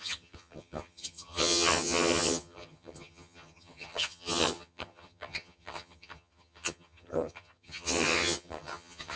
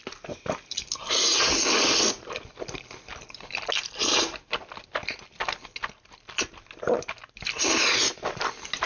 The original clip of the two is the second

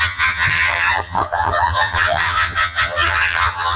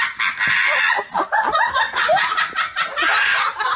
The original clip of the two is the second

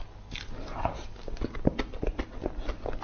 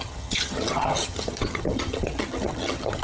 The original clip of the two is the first